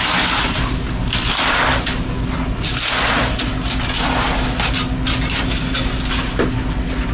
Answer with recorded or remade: recorded